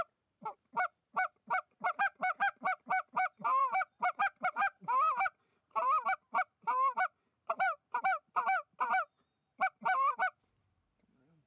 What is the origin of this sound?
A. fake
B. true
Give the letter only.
A